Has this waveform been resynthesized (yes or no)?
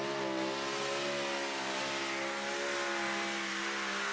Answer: no